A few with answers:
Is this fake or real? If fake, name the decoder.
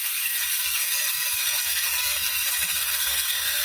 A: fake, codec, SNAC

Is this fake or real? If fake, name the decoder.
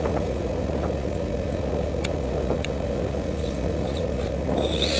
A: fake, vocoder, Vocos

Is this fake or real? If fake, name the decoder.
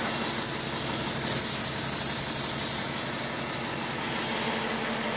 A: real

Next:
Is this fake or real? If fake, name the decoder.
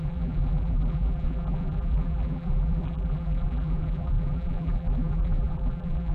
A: fake, vocoder, BigVGAN v2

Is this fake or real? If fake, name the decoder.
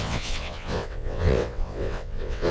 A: fake, vocoder, WaveNeXt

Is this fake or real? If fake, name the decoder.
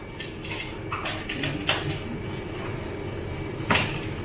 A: real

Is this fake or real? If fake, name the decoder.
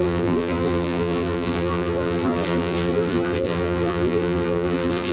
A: fake, vocoder, BigVGAN v2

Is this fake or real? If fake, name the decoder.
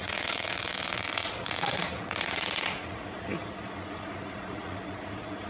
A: fake, vocoder, Vocos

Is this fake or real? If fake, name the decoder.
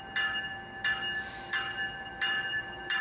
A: real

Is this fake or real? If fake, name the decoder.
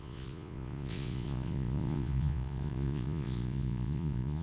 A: fake, vocoder, Vocos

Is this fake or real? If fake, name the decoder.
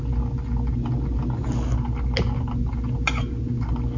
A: real